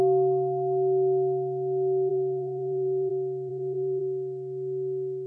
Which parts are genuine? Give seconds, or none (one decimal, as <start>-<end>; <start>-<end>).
0.0-2.1; 3.1-3.5; 4.0-5.3